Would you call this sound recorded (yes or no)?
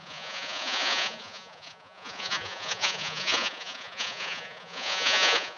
no